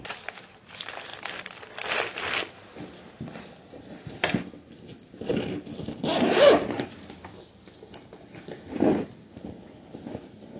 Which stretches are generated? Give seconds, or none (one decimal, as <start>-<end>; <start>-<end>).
none